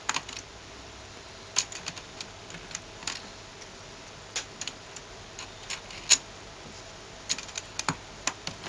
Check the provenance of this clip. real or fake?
real